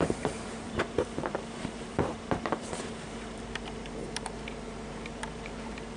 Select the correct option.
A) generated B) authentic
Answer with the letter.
A